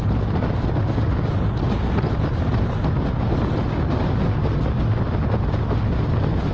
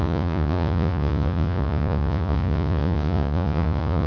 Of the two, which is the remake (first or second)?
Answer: second